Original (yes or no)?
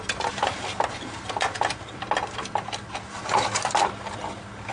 no